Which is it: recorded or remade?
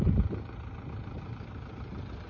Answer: remade